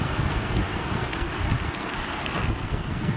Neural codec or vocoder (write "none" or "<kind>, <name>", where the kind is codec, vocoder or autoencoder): codec, SNAC